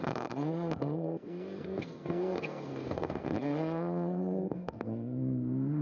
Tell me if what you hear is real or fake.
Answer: fake